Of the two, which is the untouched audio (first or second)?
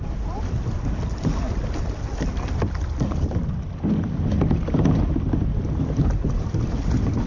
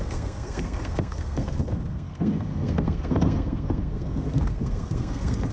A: first